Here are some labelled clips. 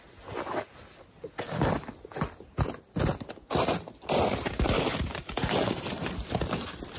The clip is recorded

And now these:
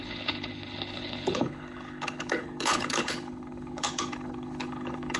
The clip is remade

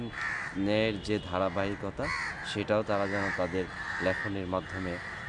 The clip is recorded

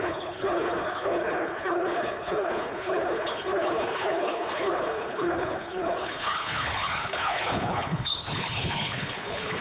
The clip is remade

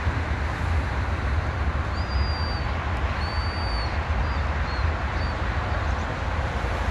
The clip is recorded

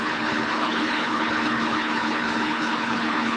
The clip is remade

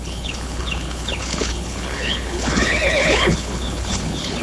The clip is remade